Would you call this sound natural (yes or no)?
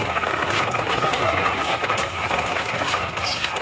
no